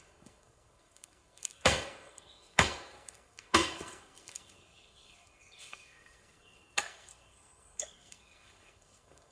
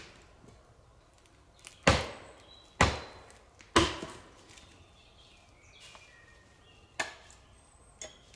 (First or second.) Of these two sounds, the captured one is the second